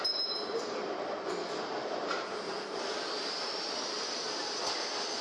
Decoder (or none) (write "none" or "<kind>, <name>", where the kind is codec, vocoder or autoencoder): none